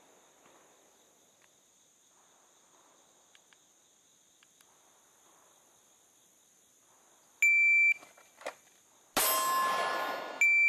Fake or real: real